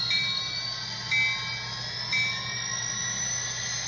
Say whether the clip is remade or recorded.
recorded